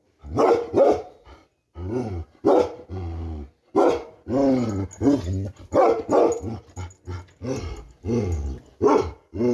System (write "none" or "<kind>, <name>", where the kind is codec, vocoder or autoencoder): none